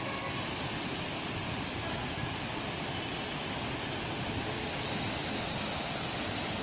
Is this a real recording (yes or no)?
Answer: yes